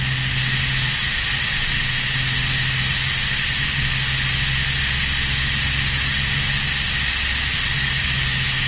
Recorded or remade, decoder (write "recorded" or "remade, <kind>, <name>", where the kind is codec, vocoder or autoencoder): recorded